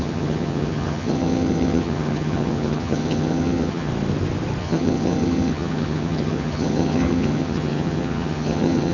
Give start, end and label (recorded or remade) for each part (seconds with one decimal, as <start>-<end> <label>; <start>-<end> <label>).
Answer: 0.0-3.9 remade; 3.9-4.6 recorded; 4.6-8.9 remade